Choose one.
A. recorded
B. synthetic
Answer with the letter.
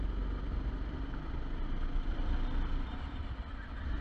A